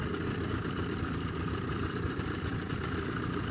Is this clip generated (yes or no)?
yes